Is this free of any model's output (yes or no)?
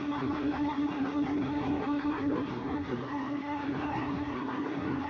no